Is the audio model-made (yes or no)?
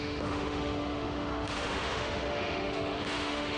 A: yes